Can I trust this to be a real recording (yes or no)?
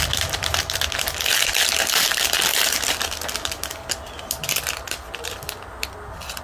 yes